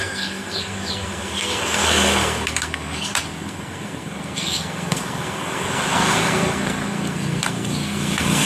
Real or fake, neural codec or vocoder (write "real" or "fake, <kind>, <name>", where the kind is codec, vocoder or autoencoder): fake, codec, SNAC